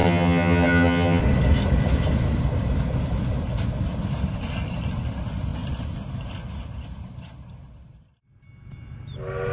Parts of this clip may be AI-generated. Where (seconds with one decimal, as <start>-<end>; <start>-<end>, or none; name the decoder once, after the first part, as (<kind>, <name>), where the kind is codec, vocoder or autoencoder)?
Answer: 0.0-1.2 (vocoder, HiFi-GAN)